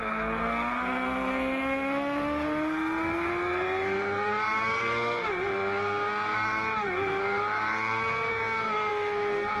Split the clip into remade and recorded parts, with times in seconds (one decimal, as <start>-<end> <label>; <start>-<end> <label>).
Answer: 0.0-9.6 remade